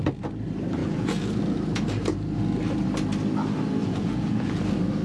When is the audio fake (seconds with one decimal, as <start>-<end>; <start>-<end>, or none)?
0.8-1.4; 3.8-4.6